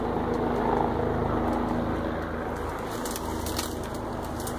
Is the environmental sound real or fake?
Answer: real